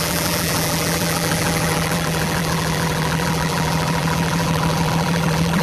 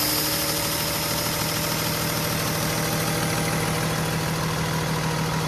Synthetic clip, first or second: first